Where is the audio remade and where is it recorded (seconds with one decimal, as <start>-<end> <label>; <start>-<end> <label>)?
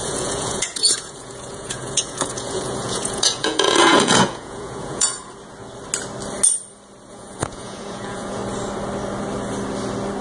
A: 0.0-5.2 remade; 5.2-7.1 recorded; 7.1-8.4 remade; 8.4-10.2 recorded